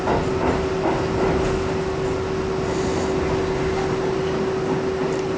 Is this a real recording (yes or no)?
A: yes